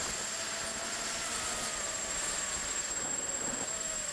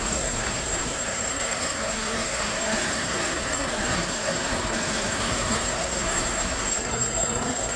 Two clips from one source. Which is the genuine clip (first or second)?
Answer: first